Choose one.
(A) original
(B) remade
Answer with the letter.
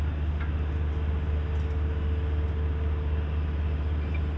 A